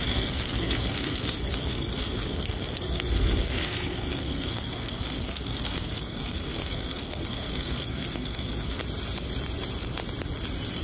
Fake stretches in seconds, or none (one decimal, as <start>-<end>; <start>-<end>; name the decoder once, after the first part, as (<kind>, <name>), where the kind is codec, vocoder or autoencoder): 0.0-8.8 (codec, SNAC)